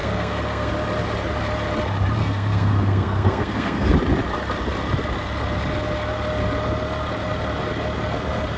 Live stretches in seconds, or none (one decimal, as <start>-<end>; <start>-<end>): 0.7-2.2; 3.9-8.6